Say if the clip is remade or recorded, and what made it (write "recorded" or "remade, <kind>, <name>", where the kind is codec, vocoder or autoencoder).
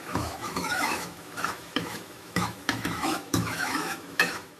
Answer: remade, autoencoder, DAC-VAE